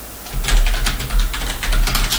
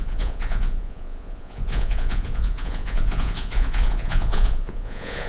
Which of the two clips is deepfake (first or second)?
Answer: second